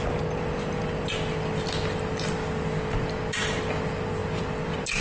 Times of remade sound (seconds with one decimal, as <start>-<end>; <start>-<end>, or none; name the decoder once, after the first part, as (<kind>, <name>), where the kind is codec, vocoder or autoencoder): none